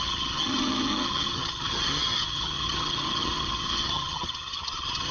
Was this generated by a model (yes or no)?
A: yes